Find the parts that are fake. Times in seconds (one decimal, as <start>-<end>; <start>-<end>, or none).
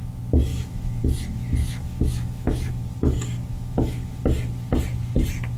0.5-1.0; 1.6-2.7; 3.5-4.2